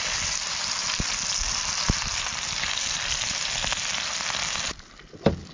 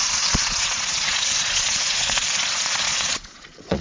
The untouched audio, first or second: first